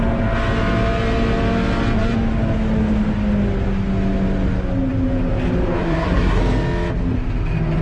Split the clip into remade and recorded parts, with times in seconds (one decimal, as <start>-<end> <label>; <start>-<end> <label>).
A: 0.0-5.8 recorded; 5.8-6.4 remade; 6.4-7.8 recorded